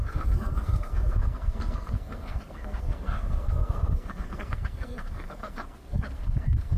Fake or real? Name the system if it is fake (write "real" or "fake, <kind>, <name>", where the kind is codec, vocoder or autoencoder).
fake, codec, SNAC